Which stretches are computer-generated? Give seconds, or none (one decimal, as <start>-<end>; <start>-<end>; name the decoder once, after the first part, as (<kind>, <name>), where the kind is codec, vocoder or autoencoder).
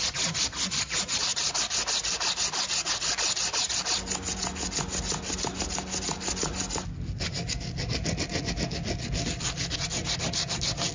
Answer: none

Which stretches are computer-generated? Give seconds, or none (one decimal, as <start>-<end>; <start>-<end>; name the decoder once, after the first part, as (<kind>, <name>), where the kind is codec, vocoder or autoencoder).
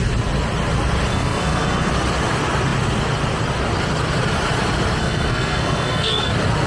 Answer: 1.1-1.9 (codec, SNAC); 5.0-6.3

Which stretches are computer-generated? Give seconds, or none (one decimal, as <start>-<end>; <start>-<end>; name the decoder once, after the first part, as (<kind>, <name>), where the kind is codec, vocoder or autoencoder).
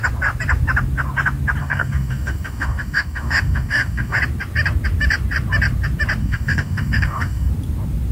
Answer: 1.6-4.2 (codec, DAC); 6.2-7.5